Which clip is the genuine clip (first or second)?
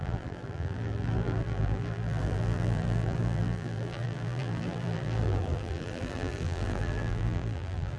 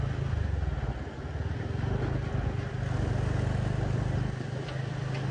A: second